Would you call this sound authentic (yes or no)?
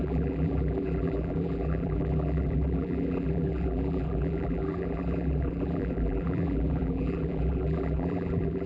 no